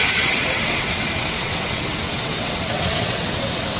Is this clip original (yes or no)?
no